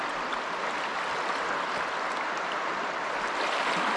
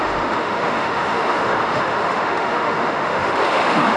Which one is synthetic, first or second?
second